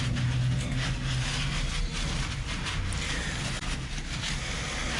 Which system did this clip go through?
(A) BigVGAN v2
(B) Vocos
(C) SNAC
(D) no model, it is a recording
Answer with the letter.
D